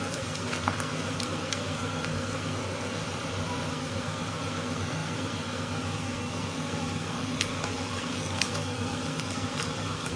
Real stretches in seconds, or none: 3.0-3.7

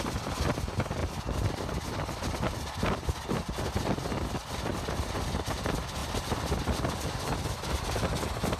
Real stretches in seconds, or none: 0.0-8.6

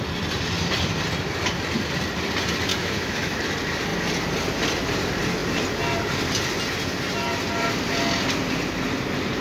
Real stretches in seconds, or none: 0.0-2.7; 3.4-9.4

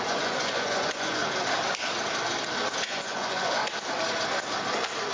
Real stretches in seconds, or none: 1.2-2.8; 3.6-5.1

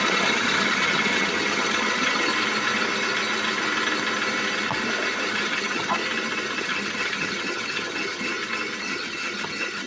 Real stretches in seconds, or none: 2.3-5.3; 6.0-6.6; 8.3-8.8